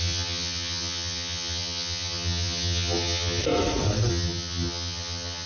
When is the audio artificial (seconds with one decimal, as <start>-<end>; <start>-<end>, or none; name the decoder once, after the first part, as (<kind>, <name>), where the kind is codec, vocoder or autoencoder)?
0.0-3.4 (vocoder, HiFi-GAN); 4.1-5.5